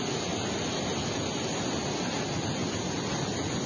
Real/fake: real